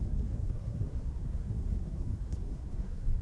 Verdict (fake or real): fake